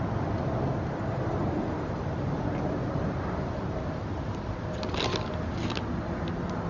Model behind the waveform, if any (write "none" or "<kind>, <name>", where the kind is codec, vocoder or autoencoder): none